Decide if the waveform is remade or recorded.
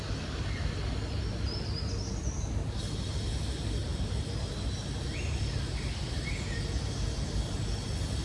recorded